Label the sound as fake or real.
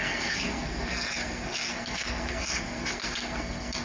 fake